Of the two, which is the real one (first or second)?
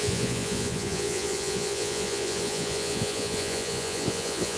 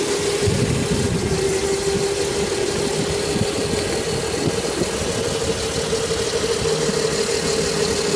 second